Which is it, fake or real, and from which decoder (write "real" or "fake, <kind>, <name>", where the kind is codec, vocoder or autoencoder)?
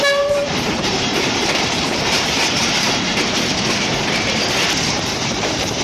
fake, vocoder, BigVGAN v2